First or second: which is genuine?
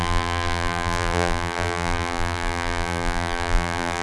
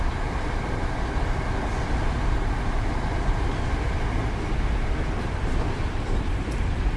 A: second